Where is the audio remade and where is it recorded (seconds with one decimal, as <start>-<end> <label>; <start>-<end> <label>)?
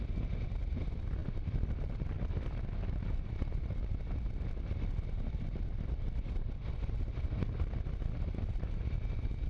0.0-9.5 recorded